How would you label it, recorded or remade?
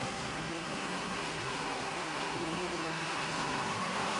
remade